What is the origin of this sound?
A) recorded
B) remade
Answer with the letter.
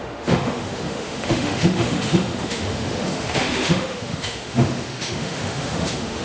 B